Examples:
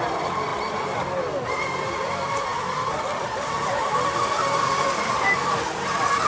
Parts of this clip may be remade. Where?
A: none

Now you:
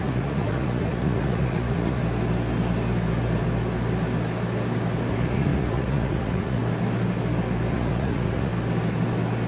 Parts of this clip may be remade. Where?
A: 0.0-2.0; 5.1-6.6; 7.7-8.5

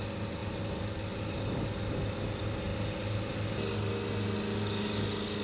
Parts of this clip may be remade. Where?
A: none

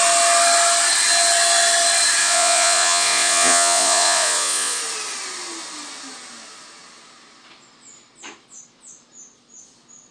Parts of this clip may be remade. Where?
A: 2.2-4.8

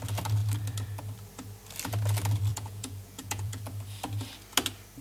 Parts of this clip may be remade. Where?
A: 2.5-3.6

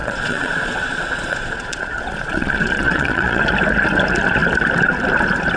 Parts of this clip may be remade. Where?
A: 0.0-3.4